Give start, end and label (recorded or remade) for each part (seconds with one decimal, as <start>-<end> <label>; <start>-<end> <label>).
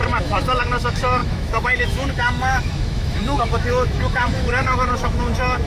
0.0-5.7 remade